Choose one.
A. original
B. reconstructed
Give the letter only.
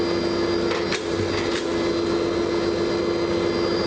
A